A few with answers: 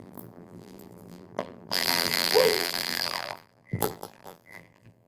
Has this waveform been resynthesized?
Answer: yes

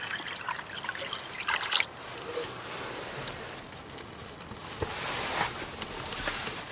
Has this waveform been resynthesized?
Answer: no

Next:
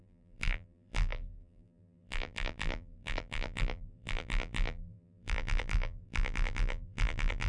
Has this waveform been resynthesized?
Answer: yes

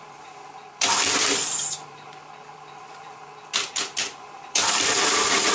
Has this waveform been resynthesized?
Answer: yes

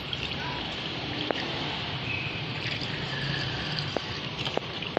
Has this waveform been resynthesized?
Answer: yes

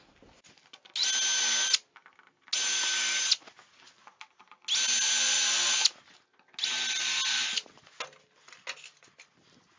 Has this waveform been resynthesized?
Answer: no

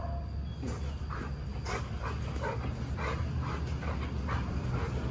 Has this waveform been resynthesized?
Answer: no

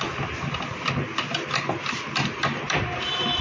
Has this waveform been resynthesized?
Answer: no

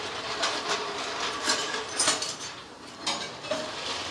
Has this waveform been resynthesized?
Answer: yes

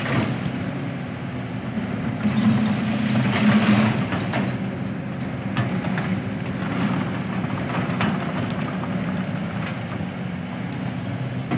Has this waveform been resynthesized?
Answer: no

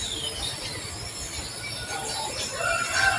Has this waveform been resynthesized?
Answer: yes